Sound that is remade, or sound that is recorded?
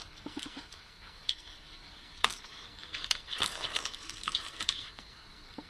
remade